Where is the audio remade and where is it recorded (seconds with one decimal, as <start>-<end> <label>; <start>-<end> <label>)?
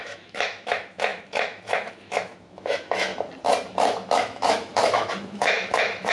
0.0-3.1 remade; 3.1-3.7 recorded; 3.7-6.1 remade